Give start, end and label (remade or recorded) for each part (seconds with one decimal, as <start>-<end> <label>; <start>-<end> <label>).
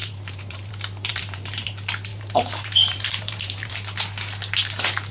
0.0-0.7 remade; 0.7-1.1 recorded; 1.1-1.7 remade; 1.7-2.1 recorded; 2.1-3.7 remade; 3.7-5.1 recorded